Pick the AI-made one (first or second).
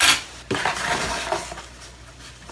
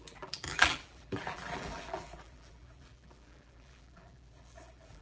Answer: second